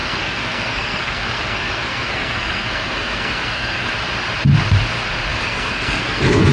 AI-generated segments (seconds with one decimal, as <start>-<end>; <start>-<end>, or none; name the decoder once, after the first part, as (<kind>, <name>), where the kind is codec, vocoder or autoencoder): 0.0-3.9 (codec, SNAC); 5.3-6.5

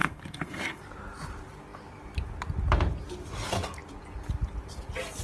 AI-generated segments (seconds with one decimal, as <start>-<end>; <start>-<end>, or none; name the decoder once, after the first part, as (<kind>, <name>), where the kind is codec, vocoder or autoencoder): 0.0-0.8 (codec, SNAC)

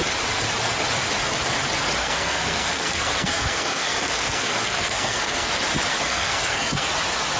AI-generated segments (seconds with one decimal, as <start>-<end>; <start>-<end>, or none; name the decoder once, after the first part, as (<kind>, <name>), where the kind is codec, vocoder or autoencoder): 2.0-5.5 (codec, SNAC); 5.9-6.9

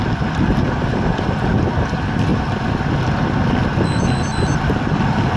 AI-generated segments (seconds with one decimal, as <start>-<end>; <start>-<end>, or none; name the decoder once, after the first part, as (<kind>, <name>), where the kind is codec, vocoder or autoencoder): none

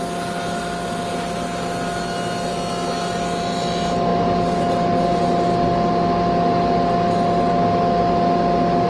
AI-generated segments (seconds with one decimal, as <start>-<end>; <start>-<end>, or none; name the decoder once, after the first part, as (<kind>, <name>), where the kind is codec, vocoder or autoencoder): none

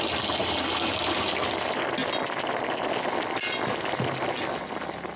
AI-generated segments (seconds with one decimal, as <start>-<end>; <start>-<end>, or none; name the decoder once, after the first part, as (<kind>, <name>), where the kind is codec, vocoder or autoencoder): none

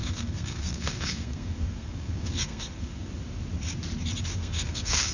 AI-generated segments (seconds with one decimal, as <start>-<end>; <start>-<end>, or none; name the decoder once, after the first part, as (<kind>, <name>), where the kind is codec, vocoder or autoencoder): 0.0-3.1 (codec, SNAC); 4.3-5.1